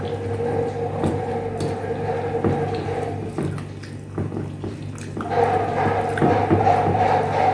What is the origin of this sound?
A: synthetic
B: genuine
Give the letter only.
B